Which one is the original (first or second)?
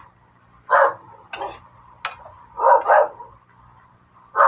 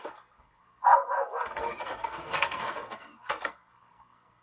first